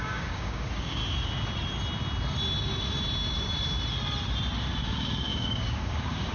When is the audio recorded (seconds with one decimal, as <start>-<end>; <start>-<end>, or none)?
1.0-4.8